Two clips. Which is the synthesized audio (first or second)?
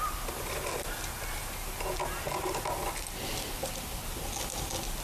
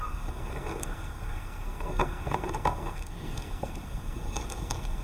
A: second